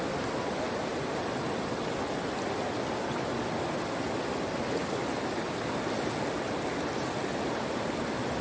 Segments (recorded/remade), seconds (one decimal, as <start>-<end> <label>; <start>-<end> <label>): 0.0-8.4 recorded